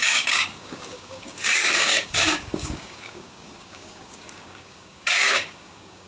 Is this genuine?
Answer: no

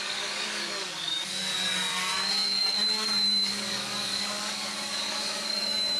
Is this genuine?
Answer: no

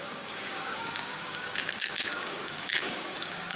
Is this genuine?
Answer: no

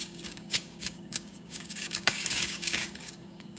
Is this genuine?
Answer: no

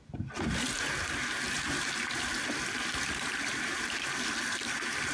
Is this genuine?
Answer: yes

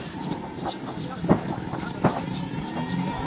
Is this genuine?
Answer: yes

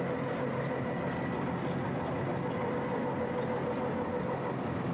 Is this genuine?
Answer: yes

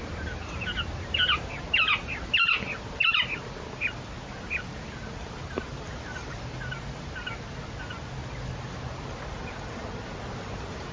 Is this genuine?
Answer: yes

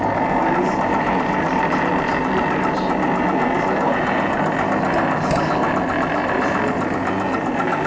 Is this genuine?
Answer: yes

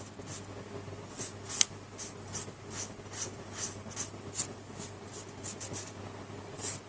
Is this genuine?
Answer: yes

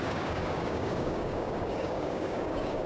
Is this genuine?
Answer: no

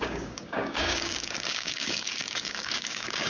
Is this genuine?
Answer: no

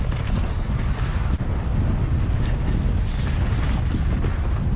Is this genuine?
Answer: yes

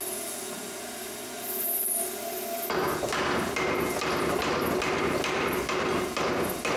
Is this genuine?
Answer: yes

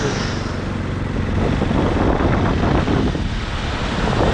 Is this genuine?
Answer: yes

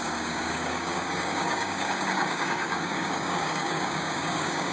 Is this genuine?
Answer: no